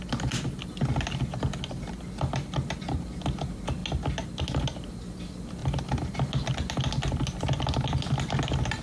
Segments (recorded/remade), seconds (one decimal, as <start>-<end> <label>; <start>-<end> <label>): 0.0-8.8 recorded